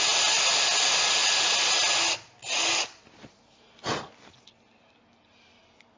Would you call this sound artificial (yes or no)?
no